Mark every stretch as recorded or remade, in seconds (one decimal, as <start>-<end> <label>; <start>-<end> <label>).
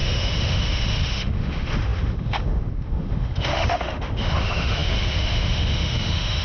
0.0-6.4 remade